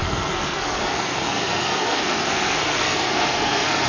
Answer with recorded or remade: remade